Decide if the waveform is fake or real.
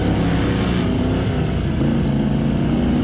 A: real